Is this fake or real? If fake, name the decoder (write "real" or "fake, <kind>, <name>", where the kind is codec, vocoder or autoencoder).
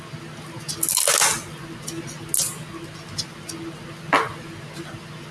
real